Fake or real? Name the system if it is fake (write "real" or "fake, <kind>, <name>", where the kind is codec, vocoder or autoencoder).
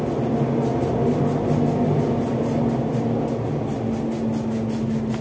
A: real